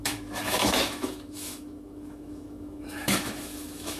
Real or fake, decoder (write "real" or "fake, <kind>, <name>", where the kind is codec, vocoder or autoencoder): fake, autoencoder, DAC-VAE